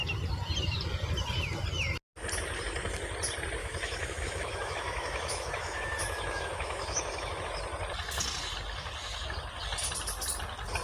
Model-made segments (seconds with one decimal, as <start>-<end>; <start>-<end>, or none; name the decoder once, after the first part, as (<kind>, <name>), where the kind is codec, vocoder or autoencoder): 3.6-7.4 (autoencoder, DAC-VAE)